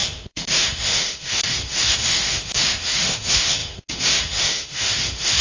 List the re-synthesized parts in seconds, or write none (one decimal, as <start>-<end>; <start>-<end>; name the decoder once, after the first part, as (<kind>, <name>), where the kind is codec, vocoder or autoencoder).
0.0-5.4 (autoencoder, DAC-VAE)